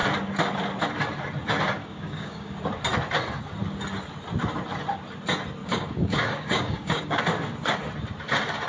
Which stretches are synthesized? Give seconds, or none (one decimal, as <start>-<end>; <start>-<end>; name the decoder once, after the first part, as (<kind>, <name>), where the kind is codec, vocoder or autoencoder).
1.8-2.6 (codec, DAC); 5.6-7.2